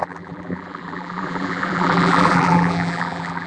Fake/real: fake